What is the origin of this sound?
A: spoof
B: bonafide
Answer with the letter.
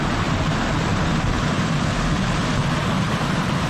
A